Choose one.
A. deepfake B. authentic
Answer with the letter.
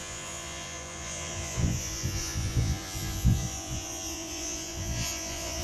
A